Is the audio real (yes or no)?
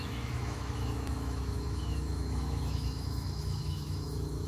no